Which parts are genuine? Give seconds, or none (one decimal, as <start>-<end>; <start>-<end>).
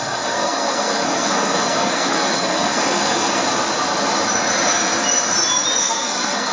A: 3.4-5.8